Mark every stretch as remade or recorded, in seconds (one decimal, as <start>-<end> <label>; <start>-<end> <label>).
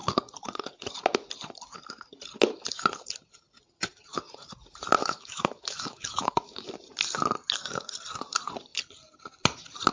0.0-5.0 recorded; 5.0-6.7 remade; 6.7-9.9 recorded